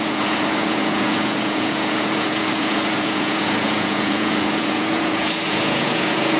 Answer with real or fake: fake